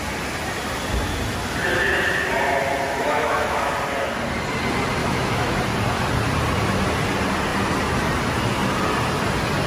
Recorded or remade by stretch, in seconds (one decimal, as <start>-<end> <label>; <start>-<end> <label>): 0.0-2.9 recorded; 2.9-3.7 remade; 3.7-5.0 recorded; 5.0-5.6 remade; 5.6-9.7 recorded